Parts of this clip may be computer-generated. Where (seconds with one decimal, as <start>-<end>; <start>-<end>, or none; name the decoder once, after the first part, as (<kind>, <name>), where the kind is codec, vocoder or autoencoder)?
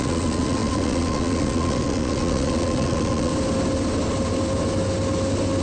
0.0-3.3 (vocoder, Vocos)